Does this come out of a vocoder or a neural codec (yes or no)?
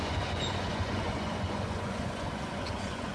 yes